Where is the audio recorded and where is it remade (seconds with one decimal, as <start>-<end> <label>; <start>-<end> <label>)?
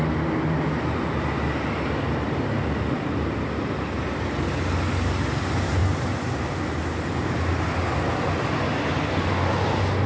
0.0-10.1 recorded